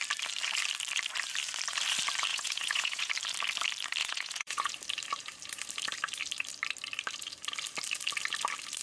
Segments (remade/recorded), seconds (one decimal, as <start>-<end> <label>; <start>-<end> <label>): 0.0-2.3 recorded; 2.3-3.1 remade; 3.1-4.0 recorded; 4.0-4.7 remade; 4.7-8.8 recorded